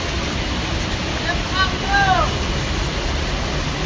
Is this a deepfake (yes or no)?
no